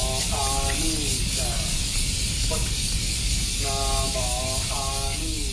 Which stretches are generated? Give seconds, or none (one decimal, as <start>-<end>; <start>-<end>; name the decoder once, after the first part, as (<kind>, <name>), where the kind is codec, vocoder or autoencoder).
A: 0.0-5.5 (codec, DAC)